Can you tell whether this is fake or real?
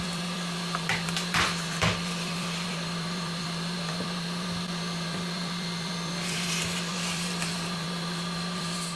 fake